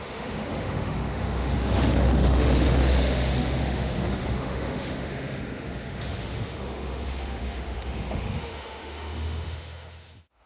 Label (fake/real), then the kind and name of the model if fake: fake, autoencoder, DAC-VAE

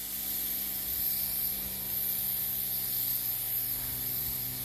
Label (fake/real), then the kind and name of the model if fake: real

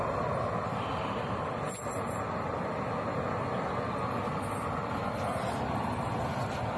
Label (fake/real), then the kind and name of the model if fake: real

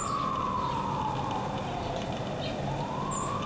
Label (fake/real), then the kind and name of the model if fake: real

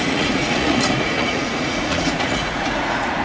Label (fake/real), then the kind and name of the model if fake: fake, vocoder, Vocos